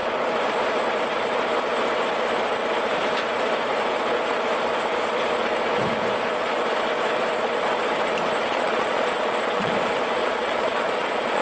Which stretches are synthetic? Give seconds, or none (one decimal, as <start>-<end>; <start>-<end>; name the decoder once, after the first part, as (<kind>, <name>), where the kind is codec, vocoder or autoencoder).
8.5-9.7 (vocoder, Vocos); 10.2-11.4